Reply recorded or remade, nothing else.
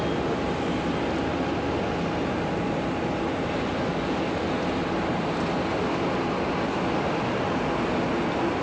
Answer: recorded